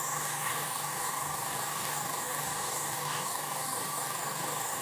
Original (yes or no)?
no